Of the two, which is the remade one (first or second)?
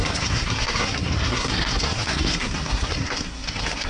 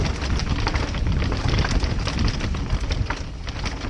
first